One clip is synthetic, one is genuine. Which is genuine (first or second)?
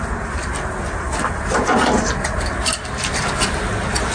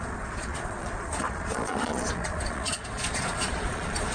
first